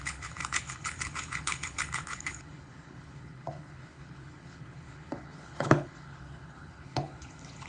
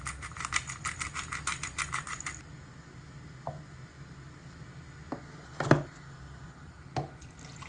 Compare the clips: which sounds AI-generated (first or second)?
first